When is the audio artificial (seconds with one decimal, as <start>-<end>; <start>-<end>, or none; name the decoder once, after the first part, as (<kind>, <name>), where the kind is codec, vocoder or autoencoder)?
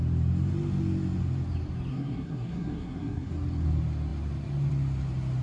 1.9-3.3 (codec, SNAC)